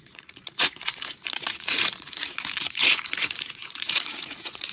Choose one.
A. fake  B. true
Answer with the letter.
A